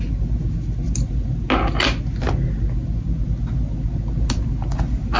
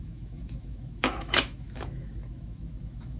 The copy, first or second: second